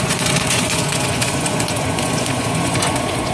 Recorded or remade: remade